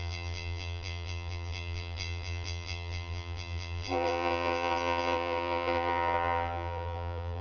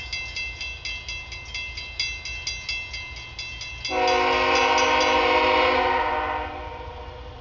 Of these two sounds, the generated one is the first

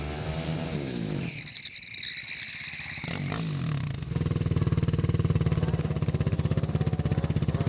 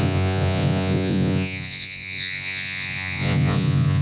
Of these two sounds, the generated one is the second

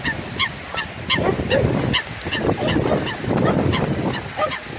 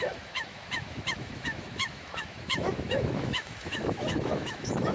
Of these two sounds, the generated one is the second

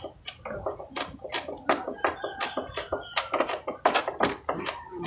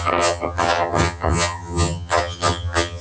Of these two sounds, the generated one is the second